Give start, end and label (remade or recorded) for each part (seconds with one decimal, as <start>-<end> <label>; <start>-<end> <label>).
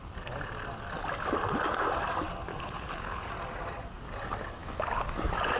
0.0-2.5 recorded; 2.5-3.3 remade; 3.3-5.6 recorded